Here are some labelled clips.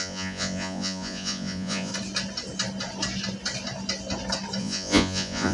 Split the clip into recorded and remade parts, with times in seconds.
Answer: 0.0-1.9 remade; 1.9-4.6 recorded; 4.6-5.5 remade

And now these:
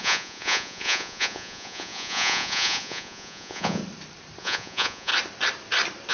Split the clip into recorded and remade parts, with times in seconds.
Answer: 0.0-3.8 remade; 3.8-4.4 recorded; 4.4-5.1 remade; 5.1-6.1 recorded

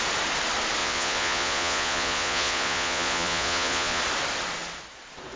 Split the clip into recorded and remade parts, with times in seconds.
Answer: 0.0-0.8 recorded; 0.8-4.0 remade; 4.0-5.4 recorded

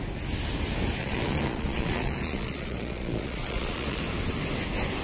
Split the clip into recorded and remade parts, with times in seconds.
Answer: 0.0-1.0 recorded; 1.0-4.0 remade; 4.0-5.0 recorded

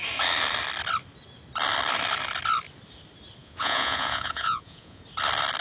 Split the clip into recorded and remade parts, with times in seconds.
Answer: 0.0-3.4 recorded; 3.4-5.0 remade; 5.0-5.6 recorded